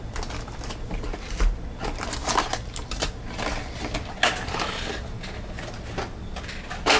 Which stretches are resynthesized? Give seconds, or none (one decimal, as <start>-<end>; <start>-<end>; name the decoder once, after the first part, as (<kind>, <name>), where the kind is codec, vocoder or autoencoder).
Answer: none